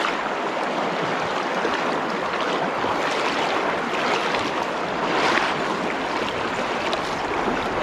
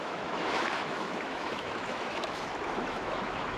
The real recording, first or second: first